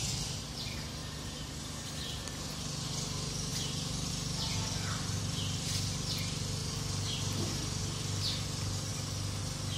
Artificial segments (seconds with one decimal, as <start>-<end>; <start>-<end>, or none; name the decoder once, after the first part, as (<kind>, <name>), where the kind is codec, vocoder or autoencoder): 1.0-1.5 (vocoder, BigVGAN v2); 3.5-4.1